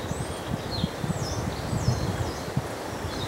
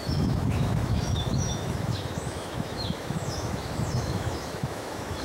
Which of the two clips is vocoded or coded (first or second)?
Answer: second